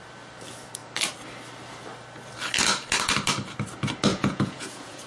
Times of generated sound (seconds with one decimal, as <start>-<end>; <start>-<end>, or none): 4.1-5.1